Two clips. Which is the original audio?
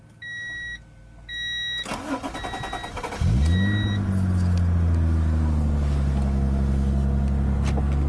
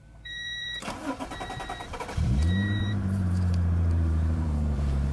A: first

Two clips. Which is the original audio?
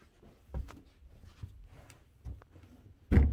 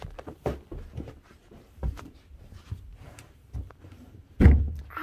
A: first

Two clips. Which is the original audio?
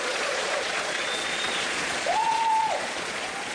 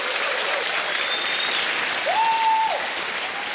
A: second